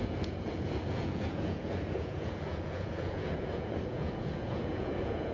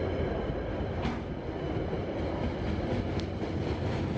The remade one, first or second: first